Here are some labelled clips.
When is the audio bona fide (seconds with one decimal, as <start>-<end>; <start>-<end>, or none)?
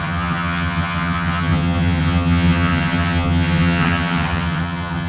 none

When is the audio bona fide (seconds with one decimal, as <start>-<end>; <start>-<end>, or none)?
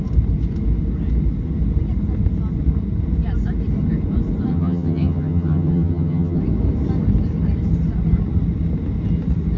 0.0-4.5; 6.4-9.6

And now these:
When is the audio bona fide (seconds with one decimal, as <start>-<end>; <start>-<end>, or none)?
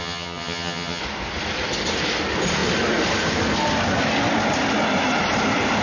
1.0-5.8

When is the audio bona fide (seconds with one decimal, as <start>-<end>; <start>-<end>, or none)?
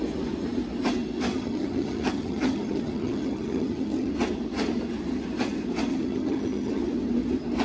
0.0-1.3; 4.1-5.9; 6.8-7.6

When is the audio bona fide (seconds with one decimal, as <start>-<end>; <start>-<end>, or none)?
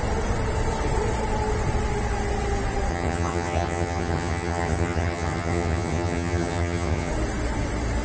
0.0-2.9; 7.1-8.0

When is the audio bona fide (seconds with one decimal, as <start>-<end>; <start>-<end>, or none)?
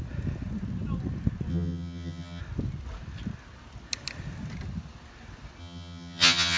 0.0-1.5; 2.4-5.6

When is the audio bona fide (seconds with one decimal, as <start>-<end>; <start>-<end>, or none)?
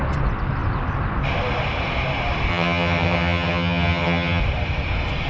0.0-2.5; 4.4-5.3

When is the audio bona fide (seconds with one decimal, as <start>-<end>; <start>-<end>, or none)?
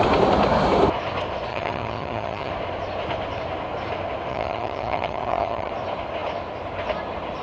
0.0-1.5; 2.5-4.3; 5.7-7.4